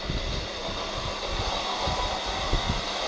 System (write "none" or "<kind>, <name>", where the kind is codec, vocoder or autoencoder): none